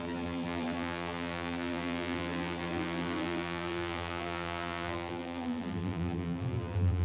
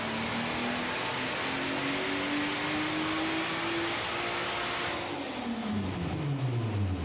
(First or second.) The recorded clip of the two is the second